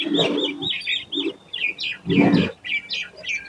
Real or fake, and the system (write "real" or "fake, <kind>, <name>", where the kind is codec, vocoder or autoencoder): real